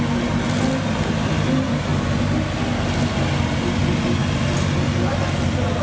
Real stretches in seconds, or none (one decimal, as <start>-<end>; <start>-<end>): 0.0-5.8